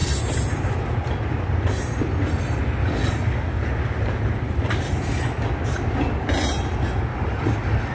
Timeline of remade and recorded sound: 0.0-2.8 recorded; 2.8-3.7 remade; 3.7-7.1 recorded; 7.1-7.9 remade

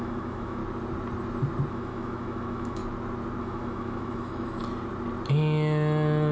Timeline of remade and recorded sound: 0.0-0.6 remade; 0.6-1.7 recorded; 1.7-2.8 remade; 2.8-3.4 recorded; 3.4-4.6 remade; 4.6-6.3 recorded

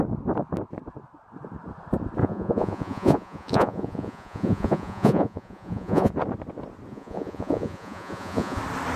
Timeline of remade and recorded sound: 0.0-2.2 recorded; 2.2-6.1 remade; 6.1-6.9 recorded; 6.9-8.6 remade; 8.6-9.0 recorded

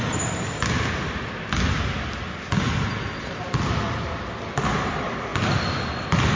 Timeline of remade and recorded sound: 0.0-6.4 recorded

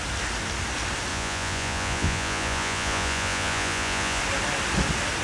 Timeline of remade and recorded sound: 0.0-1.1 recorded; 1.1-4.2 remade; 4.2-5.2 recorded

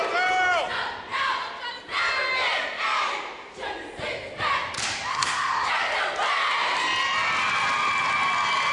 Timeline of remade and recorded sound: 0.0-5.1 recorded; 5.1-5.7 remade; 5.7-8.7 recorded

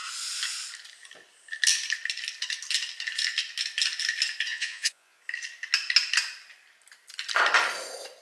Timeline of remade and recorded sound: 0.0-4.5 recorded; 4.5-5.2 remade; 5.2-8.2 recorded

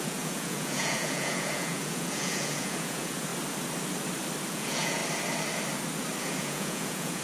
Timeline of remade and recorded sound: 0.0-3.3 remade; 3.3-4.5 recorded; 4.5-5.0 remade; 5.0-6.2 recorded; 6.2-7.2 remade